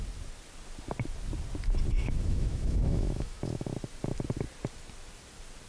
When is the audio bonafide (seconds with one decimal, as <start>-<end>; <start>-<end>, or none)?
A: 0.0-2.0; 3.7-5.7